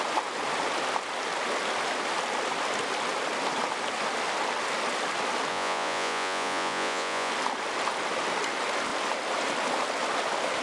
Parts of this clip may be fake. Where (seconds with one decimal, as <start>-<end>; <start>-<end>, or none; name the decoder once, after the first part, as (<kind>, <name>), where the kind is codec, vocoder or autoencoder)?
5.5-7.3 (vocoder, Vocos)

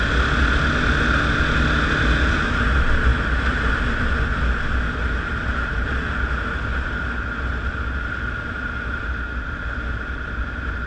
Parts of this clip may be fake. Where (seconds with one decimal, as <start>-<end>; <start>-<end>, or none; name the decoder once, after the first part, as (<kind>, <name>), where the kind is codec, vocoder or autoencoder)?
none

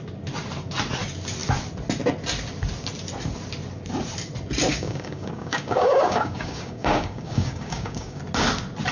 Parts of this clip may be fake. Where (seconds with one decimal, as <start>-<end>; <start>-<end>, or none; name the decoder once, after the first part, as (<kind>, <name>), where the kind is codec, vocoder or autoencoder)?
4.7-8.2 (codec, DAC)

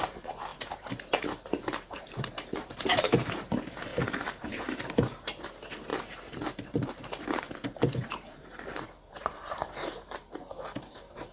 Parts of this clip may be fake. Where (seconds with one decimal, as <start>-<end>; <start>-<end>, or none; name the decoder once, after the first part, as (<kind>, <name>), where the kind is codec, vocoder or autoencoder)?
0.0-11.3 (vocoder, BigVGAN v2)

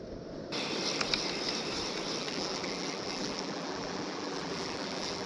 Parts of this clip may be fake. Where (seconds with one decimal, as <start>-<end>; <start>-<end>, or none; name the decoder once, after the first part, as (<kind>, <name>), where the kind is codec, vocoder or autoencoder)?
2.2-5.3 (vocoder, BigVGAN v2)